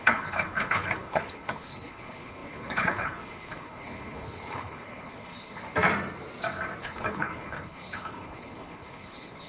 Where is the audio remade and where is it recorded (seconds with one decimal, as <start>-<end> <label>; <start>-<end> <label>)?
0.0-5.6 remade; 5.6-6.8 recorded; 6.8-9.5 remade